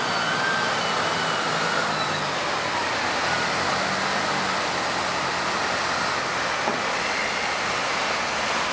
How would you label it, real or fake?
real